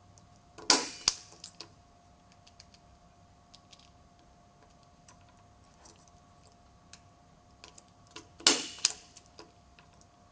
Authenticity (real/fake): real